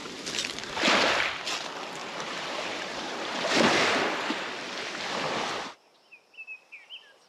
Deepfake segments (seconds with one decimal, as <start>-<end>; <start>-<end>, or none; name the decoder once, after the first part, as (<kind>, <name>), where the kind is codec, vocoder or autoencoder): 2.0-3.7 (vocoder, BigVGAN v2)